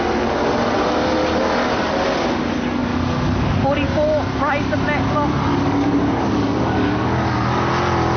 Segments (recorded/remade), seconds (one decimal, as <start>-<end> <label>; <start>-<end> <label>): 0.0-5.5 recorded; 5.5-7.7 remade; 7.7-8.2 recorded